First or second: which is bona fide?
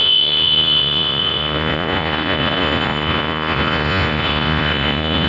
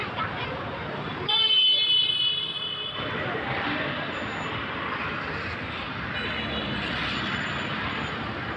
second